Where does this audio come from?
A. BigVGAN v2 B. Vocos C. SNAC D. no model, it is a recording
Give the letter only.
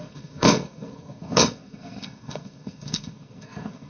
C